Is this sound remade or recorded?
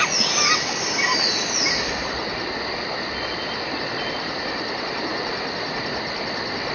recorded